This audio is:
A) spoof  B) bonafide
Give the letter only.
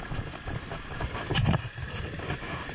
B